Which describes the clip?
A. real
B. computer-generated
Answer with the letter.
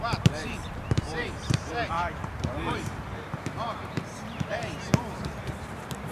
B